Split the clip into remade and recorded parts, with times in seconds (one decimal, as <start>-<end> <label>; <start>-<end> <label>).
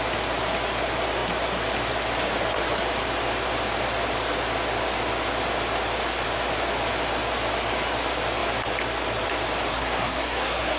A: 0.0-9.7 recorded; 9.7-10.8 remade